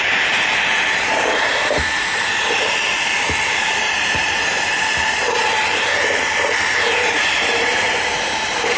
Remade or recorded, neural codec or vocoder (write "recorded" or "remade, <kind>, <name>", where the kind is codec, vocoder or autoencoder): remade, vocoder, BigVGAN v2